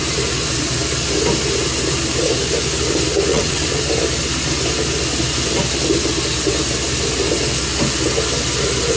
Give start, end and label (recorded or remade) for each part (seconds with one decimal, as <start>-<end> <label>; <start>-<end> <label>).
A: 0.0-3.3 recorded; 3.3-3.8 remade; 3.8-9.0 recorded